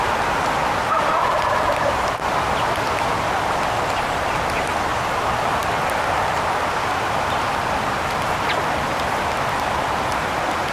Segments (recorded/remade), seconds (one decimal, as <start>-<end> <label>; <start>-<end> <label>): 0.0-10.7 recorded